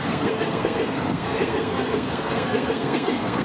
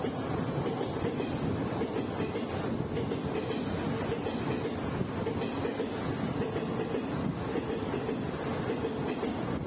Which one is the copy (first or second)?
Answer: first